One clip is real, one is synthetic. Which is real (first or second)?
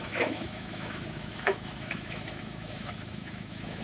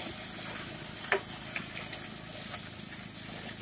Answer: second